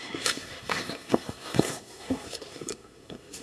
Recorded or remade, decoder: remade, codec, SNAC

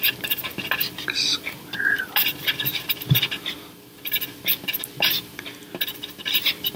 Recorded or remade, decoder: remade, vocoder, BigVGAN v2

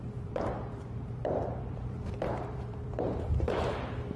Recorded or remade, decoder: remade, vocoder, BigVGAN v2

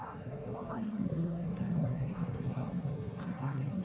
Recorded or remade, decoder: remade, codec, SNAC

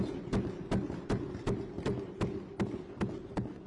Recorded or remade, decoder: remade, vocoder, BigVGAN v2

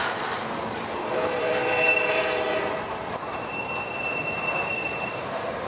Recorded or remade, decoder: remade, vocoder, BigVGAN v2